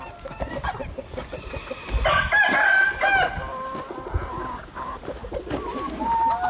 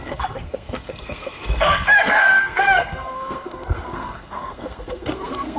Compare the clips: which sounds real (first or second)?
first